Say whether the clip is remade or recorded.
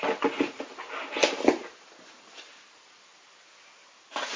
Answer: recorded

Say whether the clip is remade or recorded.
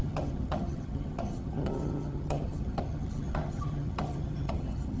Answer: remade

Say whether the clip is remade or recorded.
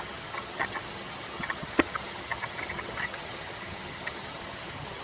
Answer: remade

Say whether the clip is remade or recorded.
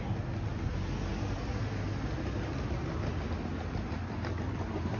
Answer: recorded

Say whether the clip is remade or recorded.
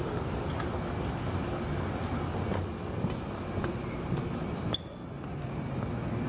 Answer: recorded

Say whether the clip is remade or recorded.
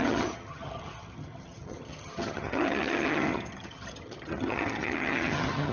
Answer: remade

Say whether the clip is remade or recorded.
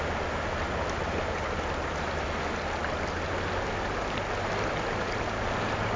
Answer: recorded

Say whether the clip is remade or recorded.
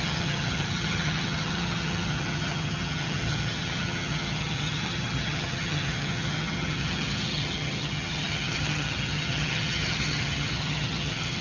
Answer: remade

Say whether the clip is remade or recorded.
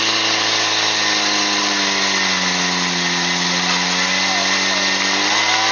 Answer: recorded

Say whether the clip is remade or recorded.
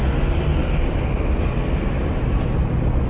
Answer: recorded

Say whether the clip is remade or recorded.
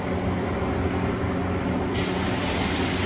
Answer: recorded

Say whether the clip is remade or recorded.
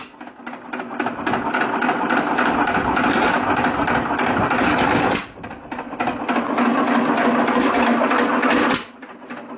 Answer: recorded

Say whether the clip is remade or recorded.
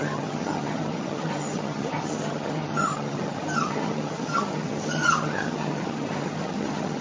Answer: remade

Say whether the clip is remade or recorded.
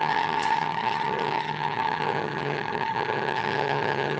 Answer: remade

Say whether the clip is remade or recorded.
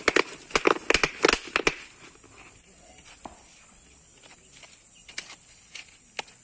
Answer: recorded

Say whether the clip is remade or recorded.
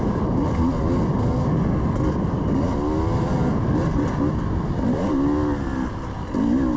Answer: recorded